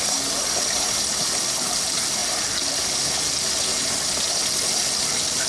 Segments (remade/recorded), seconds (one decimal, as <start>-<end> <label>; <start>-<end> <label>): 0.0-5.5 recorded